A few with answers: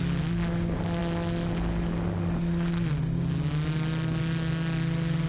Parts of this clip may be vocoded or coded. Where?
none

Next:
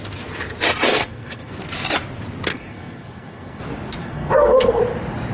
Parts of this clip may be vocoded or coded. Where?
0.9-1.5 (codec, SNAC); 2.5-3.6; 4.0-4.8

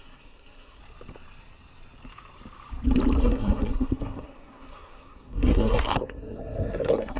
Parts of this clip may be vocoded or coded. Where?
0.0-0.8 (codec, SNAC); 3.2-7.2

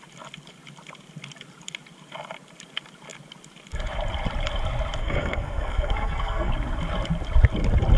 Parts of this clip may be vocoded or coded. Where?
5.0-6.5 (codec, SNAC)

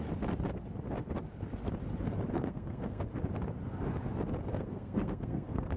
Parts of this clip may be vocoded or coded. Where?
2.3-3.0 (codec, SNAC); 4.5-5.8

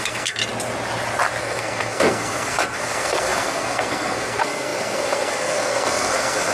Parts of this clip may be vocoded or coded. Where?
0.0-0.4 (codec, SNAC); 1.4-6.5